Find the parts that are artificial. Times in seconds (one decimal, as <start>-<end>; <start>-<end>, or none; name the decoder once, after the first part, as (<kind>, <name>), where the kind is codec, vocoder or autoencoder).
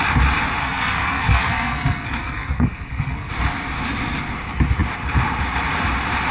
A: 0.6-3.3 (codec, SNAC)